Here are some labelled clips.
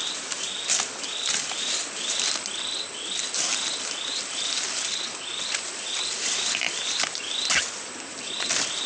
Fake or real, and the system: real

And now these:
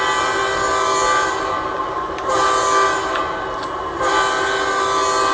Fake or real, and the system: real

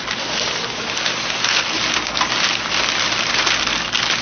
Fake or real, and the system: real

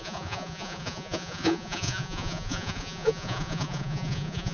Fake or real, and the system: fake, vocoder, Vocos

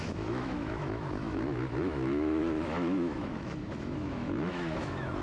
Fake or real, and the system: fake, autoencoder, DAC-VAE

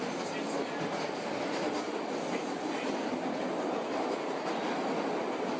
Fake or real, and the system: real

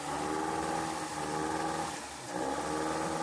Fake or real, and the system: real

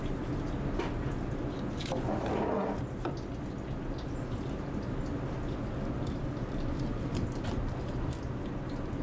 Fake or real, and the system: real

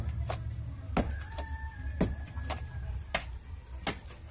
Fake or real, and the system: real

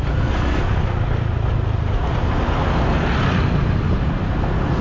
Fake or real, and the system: real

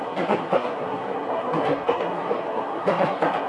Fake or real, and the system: fake, codec, SNAC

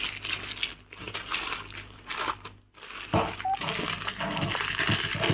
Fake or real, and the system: real